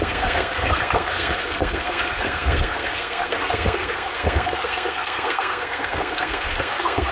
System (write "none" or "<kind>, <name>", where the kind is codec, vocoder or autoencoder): codec, SNAC